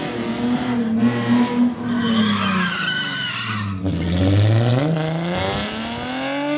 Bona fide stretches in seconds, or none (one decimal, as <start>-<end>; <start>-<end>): 0.0-6.6